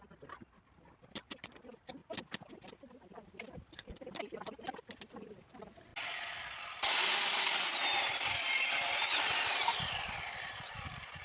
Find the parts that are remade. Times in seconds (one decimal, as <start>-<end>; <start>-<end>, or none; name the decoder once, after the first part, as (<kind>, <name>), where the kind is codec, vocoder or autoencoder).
0.0-2.0 (vocoder, BigVGAN v2); 2.5-5.9; 9.1-11.2